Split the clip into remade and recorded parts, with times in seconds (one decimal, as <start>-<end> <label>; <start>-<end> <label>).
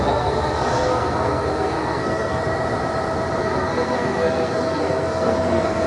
0.0-2.4 remade; 2.4-3.4 recorded; 3.4-5.9 remade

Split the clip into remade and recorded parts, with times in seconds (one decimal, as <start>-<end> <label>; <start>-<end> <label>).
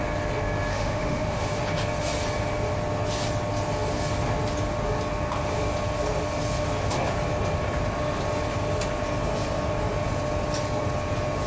0.0-0.7 recorded; 0.7-1.6 remade; 1.6-11.5 recorded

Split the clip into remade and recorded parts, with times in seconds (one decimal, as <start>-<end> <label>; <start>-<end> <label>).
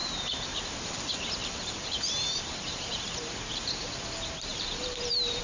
0.0-1.0 remade; 1.0-1.4 recorded; 1.4-3.9 remade; 3.9-4.5 recorded; 4.5-5.4 remade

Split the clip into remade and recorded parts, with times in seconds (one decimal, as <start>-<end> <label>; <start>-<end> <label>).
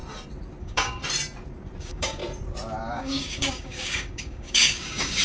0.0-0.6 recorded; 0.6-1.0 remade; 1.0-1.8 recorded; 1.8-2.2 remade; 2.2-2.9 recorded; 2.9-5.2 remade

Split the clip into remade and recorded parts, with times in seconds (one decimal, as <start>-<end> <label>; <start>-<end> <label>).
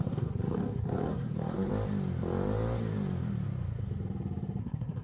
0.0-1.7 remade; 1.7-4.6 recorded; 4.6-5.0 remade